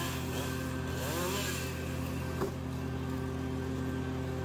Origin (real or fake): real